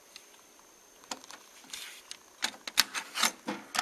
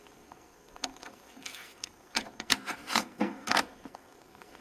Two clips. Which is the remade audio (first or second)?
second